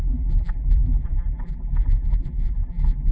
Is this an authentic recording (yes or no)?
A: no